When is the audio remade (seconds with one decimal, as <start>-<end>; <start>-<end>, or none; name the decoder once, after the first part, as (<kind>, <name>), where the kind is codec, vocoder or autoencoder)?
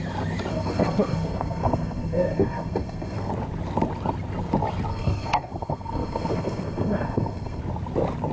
0.5-3.3 (codec, SNAC); 4.9-7.6